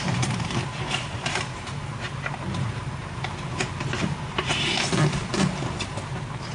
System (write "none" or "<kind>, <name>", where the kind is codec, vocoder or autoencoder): vocoder, BigVGAN v2